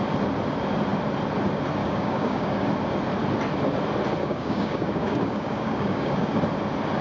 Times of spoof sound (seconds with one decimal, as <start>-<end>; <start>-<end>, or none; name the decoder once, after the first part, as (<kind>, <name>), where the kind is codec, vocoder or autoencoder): 1.8-2.7 (codec, DAC); 4.2-6.4